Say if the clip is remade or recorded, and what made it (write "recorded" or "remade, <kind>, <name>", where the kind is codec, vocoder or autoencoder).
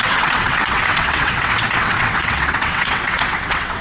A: remade, vocoder, WaveNeXt